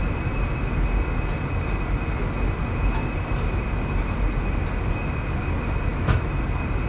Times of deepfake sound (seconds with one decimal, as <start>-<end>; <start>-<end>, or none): 5.9-6.4